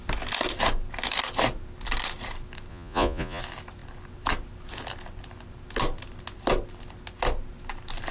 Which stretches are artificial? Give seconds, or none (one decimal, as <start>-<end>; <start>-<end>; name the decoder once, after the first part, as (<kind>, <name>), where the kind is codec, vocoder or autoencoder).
2.7-3.4 (vocoder, Vocos)